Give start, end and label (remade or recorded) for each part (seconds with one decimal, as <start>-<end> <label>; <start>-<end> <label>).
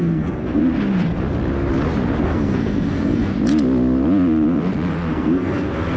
0.0-0.6 remade; 0.6-2.2 recorded; 2.2-3.3 remade; 3.3-5.1 recorded; 5.1-6.0 remade